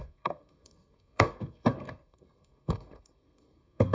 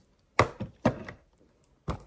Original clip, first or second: second